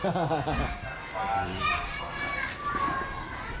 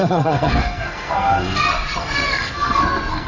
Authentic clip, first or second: first